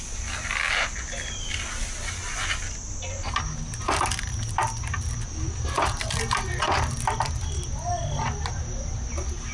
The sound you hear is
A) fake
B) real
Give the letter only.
B